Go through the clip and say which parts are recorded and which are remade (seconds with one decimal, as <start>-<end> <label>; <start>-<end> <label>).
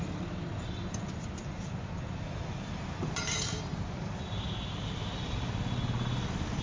0.0-0.5 recorded; 0.5-4.5 remade; 4.5-6.6 recorded